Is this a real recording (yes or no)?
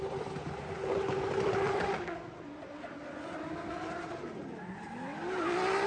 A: yes